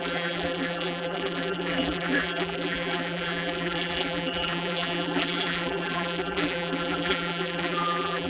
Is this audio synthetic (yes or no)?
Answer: yes